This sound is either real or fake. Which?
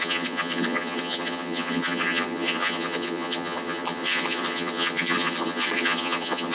fake